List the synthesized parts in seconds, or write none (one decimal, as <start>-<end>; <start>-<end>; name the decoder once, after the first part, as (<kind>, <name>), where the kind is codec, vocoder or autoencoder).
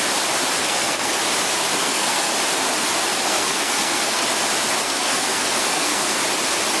0.6-1.2 (codec, SNAC); 1.7-2.3; 3.1-4.2; 4.8-6.2